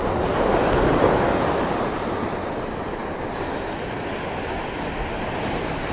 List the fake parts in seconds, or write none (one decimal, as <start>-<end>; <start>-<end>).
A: 1.6-3.0; 4.9-5.9